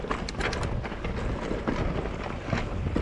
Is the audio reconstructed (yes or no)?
no